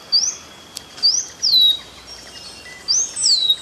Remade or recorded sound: recorded